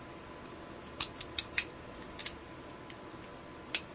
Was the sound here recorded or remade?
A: recorded